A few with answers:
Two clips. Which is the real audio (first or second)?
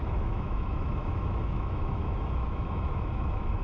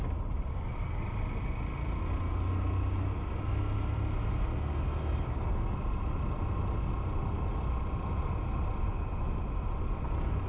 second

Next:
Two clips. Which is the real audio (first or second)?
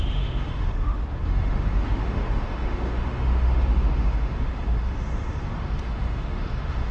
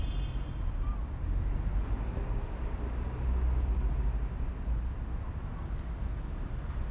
second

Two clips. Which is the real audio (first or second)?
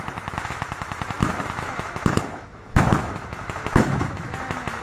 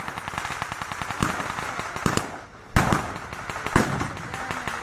second